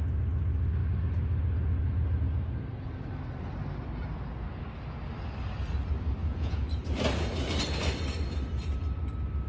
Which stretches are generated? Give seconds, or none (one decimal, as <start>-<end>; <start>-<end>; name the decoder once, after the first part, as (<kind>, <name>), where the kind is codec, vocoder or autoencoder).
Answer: 6.2-6.7 (vocoder, Vocos)